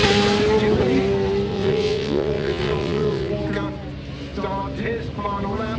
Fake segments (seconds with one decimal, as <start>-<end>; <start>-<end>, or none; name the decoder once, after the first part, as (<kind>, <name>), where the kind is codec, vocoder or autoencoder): 1.5-3.3 (vocoder, WaveNeXt)

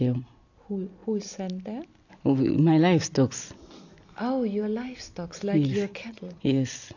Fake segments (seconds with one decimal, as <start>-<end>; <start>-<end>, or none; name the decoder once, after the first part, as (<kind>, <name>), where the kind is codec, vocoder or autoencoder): 6.0-7.0 (vocoder, WaveNeXt)

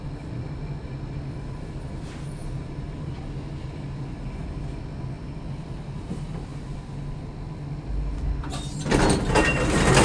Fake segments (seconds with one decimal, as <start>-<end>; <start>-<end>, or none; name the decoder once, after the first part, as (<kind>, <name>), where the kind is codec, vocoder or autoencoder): none

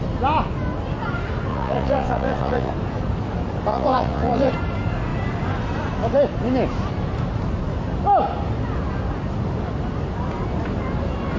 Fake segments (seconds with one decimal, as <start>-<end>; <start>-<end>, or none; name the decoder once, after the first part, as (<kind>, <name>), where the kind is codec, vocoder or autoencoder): 1.5-2.7 (vocoder, WaveNeXt); 3.7-4.5

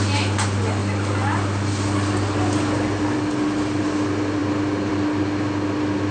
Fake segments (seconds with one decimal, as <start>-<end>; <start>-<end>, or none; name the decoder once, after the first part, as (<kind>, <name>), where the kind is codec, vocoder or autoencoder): none